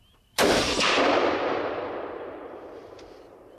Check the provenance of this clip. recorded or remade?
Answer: remade